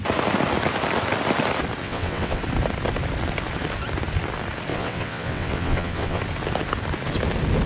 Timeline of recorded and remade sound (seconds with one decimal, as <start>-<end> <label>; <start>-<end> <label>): 0.0-1.8 recorded; 1.8-2.4 remade; 2.4-4.7 recorded; 4.7-6.2 remade; 6.2-7.7 recorded